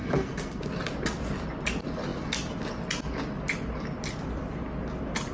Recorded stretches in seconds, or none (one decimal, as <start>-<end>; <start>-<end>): 0.6-5.3